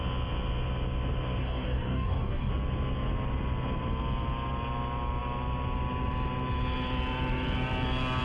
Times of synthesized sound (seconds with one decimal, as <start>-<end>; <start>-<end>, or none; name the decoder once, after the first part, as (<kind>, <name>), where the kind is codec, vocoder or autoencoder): 1.4-2.5 (codec, DAC)